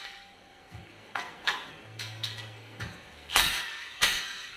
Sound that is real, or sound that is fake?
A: fake